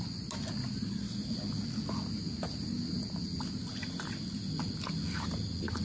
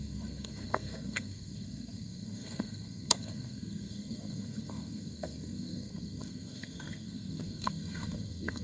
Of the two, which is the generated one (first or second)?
second